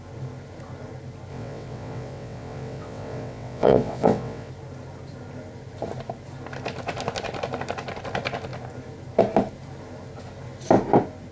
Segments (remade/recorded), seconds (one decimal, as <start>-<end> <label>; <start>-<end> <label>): 0.0-1.3 recorded; 1.3-4.5 remade; 4.5-11.3 recorded